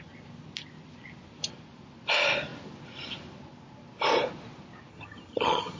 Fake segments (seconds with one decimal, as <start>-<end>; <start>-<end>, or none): 4.9-5.8